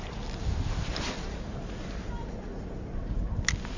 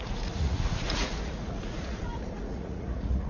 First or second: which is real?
first